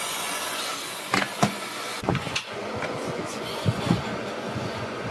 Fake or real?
fake